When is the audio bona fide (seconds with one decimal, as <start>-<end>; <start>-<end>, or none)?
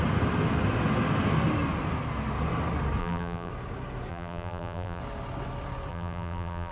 0.0-3.0; 3.5-4.1; 5.0-5.9